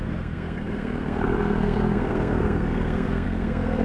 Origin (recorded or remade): remade